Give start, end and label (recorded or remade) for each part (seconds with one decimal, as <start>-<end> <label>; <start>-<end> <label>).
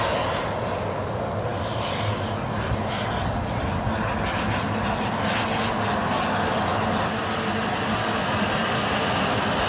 0.0-9.7 recorded